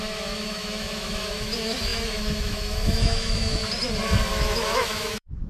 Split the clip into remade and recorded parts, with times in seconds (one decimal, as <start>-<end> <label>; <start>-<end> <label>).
0.0-3.6 remade; 3.6-4.3 recorded; 4.3-5.5 remade